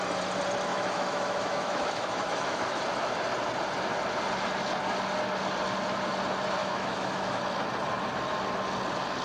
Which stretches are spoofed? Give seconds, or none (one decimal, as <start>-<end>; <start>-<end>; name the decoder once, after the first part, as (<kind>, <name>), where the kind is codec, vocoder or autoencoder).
0.7-2.8 (autoencoder, DAC-VAE); 6.6-7.4